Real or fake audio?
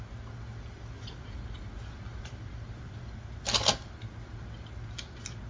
real